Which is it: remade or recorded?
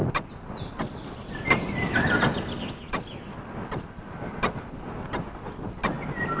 recorded